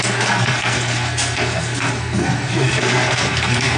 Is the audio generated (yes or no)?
yes